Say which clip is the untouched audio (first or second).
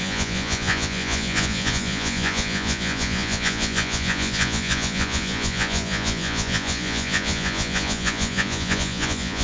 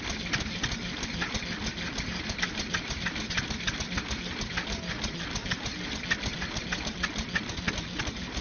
second